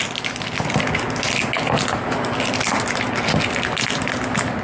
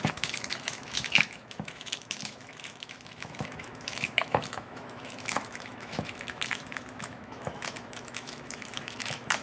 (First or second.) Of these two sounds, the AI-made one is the second